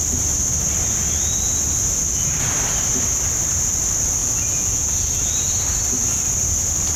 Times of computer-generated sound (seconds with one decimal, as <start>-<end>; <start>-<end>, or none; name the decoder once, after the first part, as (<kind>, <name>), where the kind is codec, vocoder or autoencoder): 4.2-5.2 (vocoder, Vocos)